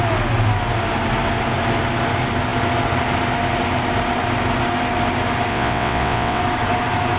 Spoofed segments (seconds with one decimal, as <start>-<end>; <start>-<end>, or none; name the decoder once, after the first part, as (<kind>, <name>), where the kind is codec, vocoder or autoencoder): 5.5-6.4 (vocoder, WaveNeXt)